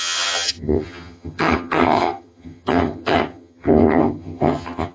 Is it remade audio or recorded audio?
remade